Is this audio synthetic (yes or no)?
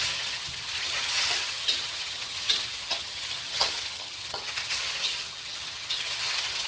yes